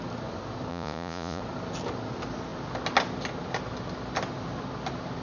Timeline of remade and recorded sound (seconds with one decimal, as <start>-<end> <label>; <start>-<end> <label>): 0.0-0.7 recorded; 0.7-1.4 remade; 1.4-5.2 recorded